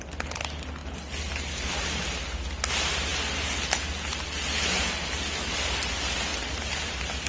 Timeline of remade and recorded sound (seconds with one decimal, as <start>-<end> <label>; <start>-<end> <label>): 0.0-7.3 recorded